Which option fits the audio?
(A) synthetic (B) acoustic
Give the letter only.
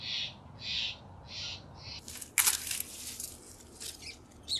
B